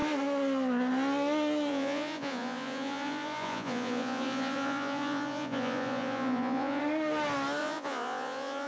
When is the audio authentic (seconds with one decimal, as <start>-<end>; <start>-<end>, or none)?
0.0-1.7; 6.8-7.6